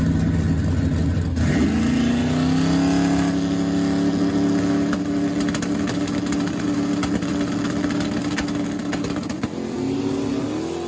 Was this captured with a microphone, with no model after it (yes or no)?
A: yes